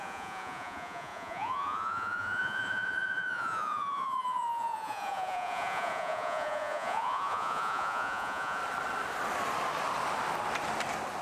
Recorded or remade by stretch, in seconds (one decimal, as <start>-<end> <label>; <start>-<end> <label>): 0.0-8.6 remade; 8.6-11.2 recorded